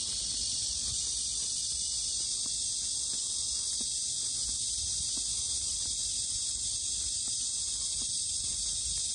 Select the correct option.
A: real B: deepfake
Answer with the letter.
A